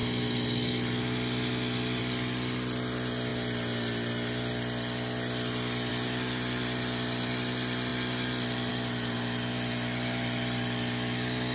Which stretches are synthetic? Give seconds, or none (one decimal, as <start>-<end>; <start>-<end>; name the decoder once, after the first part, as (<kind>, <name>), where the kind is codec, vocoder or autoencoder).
2.0-3.3 (vocoder, BigVGAN v2); 5.9-11.5